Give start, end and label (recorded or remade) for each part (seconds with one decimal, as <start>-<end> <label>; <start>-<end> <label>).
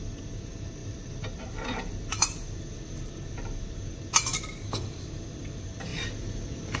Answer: 0.0-5.9 remade; 5.9-6.8 recorded